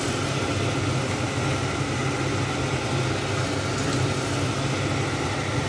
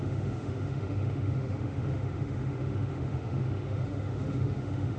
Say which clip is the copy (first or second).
second